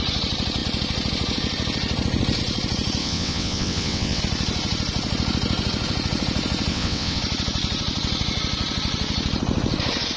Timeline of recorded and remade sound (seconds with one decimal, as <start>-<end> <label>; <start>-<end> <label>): 0.0-3.0 recorded; 3.0-4.2 remade; 4.2-6.7 recorded; 6.7-7.2 remade; 7.2-10.2 recorded